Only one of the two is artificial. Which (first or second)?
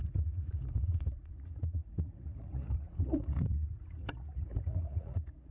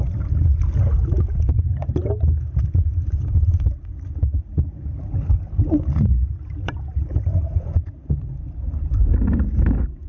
first